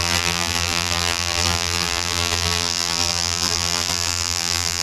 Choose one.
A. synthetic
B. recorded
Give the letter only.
A